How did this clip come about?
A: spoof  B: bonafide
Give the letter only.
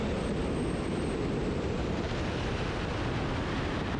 B